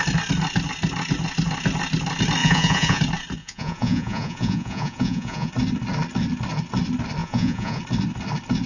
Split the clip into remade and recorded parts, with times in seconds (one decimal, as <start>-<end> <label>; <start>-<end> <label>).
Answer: 0.0-2.4 recorded; 2.4-3.0 remade; 3.0-3.4 recorded; 3.4-5.5 remade; 5.5-7.2 recorded; 7.2-7.8 remade; 7.8-8.7 recorded